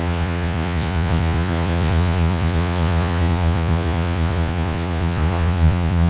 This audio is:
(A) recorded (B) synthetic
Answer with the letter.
B